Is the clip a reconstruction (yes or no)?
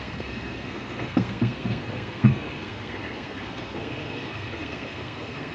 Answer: yes